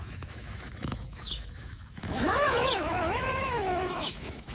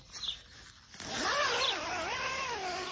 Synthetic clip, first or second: first